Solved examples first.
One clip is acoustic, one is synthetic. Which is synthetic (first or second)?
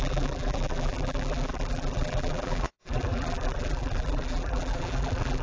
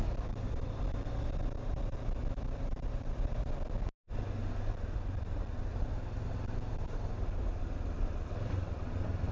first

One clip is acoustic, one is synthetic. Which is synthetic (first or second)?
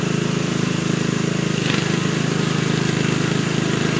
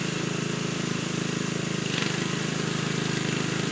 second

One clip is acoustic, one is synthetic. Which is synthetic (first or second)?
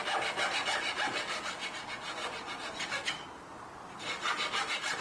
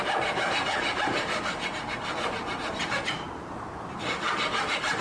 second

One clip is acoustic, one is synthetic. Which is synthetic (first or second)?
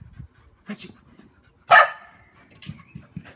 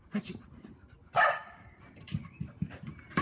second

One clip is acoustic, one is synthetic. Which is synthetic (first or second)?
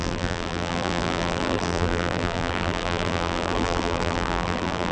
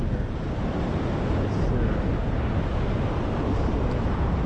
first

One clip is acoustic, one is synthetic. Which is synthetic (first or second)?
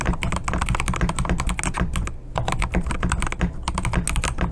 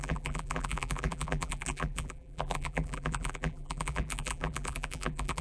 second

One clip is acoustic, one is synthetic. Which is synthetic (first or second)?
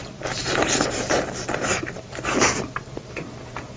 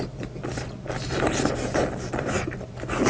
first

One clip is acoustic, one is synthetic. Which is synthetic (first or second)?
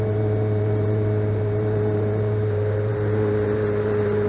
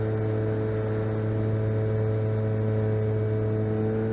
first